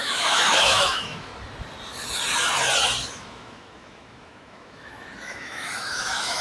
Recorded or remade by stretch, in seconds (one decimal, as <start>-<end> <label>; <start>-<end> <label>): 0.0-1.3 remade; 1.3-3.1 recorded; 3.1-6.4 remade